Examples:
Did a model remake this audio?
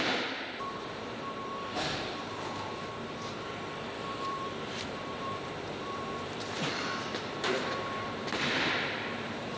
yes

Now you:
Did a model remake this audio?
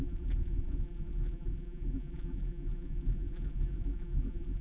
yes